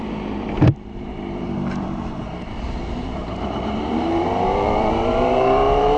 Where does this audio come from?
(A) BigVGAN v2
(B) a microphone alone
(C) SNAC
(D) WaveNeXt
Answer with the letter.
A